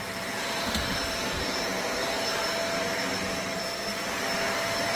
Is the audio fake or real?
fake